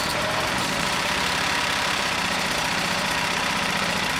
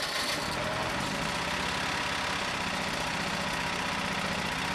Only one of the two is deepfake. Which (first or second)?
first